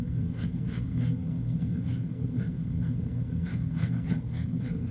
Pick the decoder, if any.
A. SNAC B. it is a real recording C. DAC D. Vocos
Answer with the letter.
A